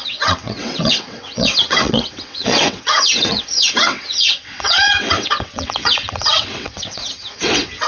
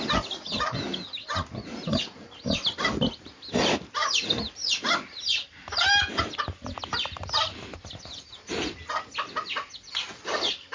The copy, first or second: first